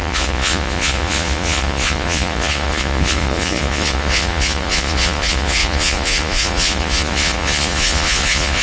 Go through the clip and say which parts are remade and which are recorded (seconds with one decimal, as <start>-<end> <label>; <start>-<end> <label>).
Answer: 0.0-8.6 remade